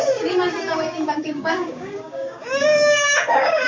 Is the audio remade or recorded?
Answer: remade